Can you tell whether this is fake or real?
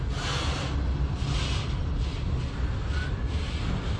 real